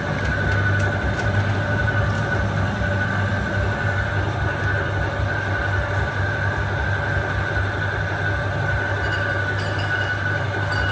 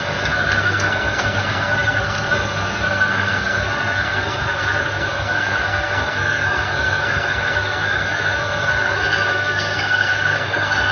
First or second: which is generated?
second